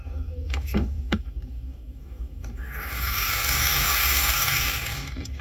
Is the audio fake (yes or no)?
yes